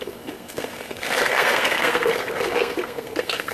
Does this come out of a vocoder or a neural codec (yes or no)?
yes